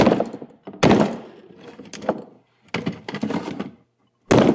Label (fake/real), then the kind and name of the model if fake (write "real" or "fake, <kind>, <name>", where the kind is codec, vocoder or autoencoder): real